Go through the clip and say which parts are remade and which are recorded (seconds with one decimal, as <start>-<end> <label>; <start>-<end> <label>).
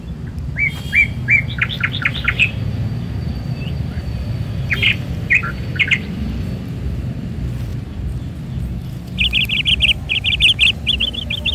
0.0-11.5 recorded